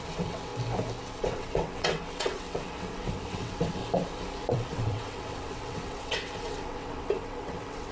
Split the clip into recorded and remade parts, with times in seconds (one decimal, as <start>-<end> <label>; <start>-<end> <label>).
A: 0.0-0.5 remade; 0.5-1.0 recorded; 1.0-3.8 remade; 3.8-4.5 recorded; 4.5-7.9 remade